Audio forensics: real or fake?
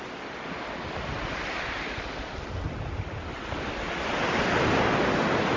real